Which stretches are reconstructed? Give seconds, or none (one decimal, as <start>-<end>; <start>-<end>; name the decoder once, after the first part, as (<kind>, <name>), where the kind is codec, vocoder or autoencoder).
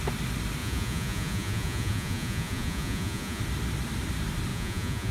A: 0.6-3.4 (vocoder, Vocos); 4.5-5.1